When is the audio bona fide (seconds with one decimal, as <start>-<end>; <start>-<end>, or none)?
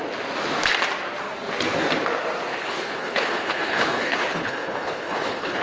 0.0-2.5